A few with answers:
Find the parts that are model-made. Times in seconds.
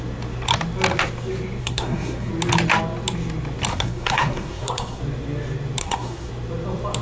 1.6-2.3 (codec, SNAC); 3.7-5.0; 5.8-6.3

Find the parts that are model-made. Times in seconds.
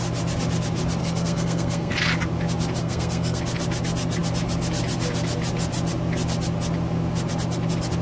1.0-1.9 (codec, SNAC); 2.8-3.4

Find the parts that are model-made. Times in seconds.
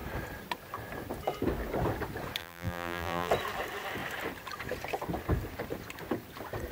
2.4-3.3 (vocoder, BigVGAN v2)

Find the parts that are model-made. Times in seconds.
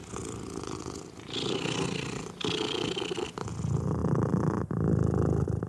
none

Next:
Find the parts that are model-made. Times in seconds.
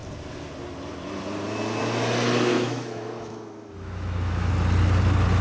2.5-4.5 (autoencoder, DAC-VAE)